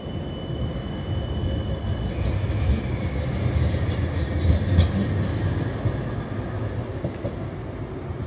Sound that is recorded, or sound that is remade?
recorded